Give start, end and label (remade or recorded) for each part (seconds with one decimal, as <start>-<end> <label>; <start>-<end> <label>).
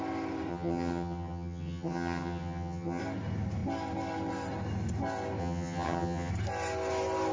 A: 0.0-0.5 recorded; 0.5-3.0 remade; 3.0-5.4 recorded; 5.4-6.3 remade; 6.3-7.3 recorded